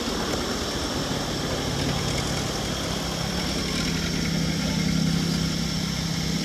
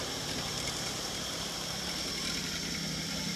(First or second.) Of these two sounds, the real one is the first